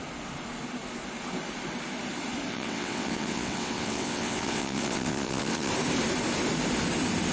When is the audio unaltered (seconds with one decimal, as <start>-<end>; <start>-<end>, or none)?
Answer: 0.0-2.5; 5.7-7.3